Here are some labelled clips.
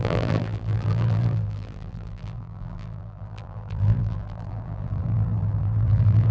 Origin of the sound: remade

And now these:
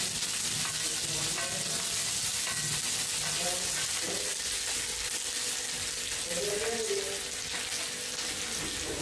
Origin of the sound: recorded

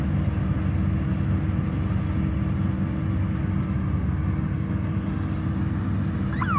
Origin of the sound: recorded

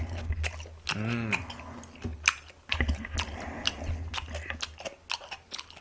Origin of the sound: recorded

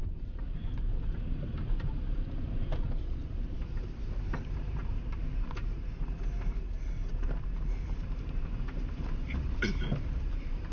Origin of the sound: remade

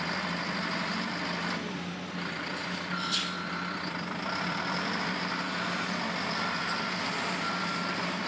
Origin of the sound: remade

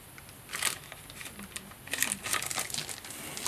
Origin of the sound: recorded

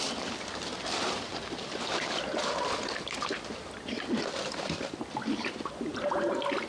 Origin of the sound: remade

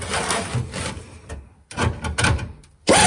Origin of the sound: remade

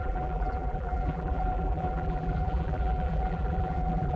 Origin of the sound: remade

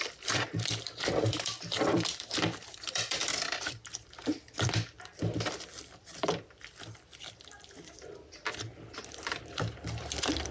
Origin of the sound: remade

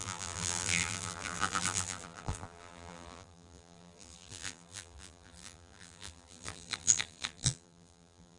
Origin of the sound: remade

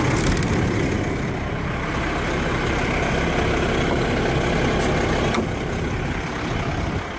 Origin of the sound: recorded